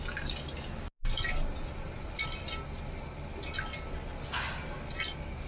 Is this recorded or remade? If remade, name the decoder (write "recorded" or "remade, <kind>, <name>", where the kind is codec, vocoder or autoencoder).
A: recorded